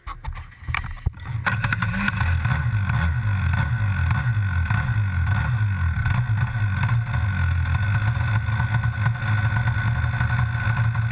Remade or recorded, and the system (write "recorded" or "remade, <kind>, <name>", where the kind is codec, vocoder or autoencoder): recorded